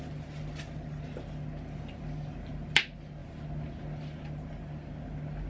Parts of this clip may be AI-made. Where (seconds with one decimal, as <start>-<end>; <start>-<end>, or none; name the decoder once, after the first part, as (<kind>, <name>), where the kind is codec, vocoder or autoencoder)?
none